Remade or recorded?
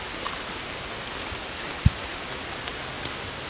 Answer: recorded